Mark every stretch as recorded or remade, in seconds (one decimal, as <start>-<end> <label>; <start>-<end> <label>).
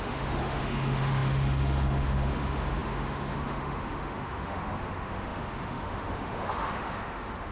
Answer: 0.0-7.5 remade